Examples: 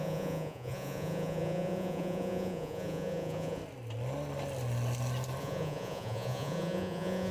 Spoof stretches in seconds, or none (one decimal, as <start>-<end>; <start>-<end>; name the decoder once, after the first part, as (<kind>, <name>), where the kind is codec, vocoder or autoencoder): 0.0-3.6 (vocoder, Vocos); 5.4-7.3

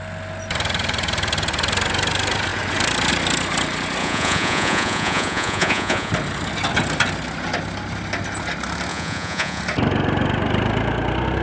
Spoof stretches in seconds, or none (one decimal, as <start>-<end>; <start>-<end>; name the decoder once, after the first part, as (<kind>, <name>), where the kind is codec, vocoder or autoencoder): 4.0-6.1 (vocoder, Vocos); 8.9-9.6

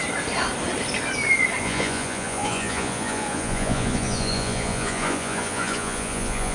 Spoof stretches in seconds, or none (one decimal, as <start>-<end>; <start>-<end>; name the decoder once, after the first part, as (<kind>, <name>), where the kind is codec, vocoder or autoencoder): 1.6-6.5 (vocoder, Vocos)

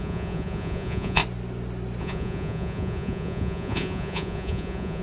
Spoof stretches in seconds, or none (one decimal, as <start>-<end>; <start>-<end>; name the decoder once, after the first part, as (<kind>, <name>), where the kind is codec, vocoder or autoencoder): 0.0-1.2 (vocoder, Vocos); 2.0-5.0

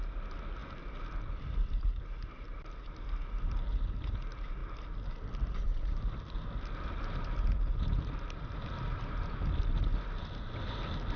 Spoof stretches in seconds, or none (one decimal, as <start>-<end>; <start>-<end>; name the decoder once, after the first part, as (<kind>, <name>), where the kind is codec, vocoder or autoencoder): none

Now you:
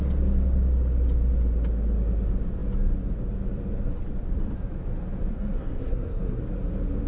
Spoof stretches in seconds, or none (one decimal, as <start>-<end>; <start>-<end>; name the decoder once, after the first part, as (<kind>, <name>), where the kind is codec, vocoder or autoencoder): 5.3-6.4 (codec, SNAC)

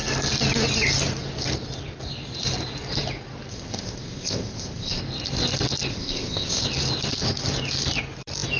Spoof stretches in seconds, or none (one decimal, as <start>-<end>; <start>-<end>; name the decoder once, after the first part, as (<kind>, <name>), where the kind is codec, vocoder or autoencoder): 3.5-5.0 (codec, ZipCodec); 5.9-6.6

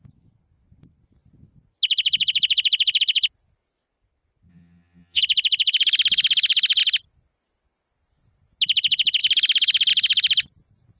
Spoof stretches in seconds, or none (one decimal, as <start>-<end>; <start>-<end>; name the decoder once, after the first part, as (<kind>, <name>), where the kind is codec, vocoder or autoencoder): 4.5-5.2 (vocoder, HiFi-GAN)